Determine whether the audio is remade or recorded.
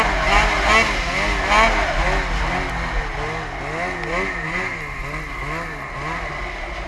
recorded